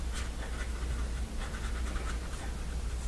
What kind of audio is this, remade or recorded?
recorded